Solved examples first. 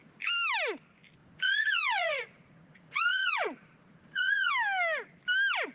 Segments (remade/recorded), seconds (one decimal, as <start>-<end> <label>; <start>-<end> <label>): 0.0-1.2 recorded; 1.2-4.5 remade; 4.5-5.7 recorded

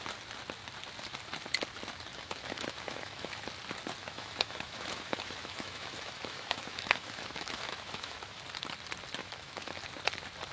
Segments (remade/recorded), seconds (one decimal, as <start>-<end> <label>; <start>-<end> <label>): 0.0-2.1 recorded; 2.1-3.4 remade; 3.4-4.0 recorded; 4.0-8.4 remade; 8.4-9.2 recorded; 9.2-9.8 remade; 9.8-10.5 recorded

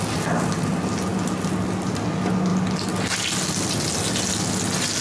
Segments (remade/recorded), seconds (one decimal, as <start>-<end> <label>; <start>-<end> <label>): 0.0-5.0 recorded